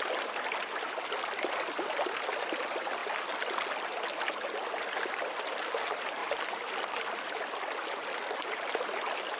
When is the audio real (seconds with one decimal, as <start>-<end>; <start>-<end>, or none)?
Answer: 0.0-9.4